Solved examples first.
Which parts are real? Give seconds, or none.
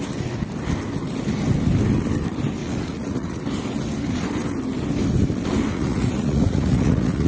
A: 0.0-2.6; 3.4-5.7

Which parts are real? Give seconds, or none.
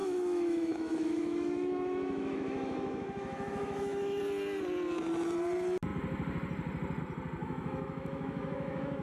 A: 4.2-7.4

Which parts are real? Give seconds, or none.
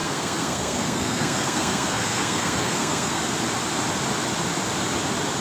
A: 3.2-5.4